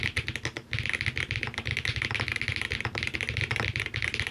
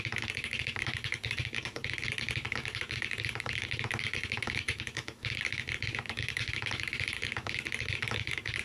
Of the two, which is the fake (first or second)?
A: second